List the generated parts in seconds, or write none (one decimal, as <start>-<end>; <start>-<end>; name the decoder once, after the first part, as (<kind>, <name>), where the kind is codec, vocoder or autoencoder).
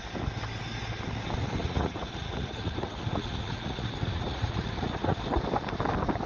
1.4-5.2 (vocoder, Vocos)